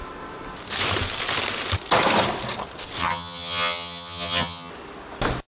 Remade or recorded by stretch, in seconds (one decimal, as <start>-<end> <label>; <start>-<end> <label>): 0.0-3.0 recorded; 3.0-4.7 remade; 4.7-5.5 recorded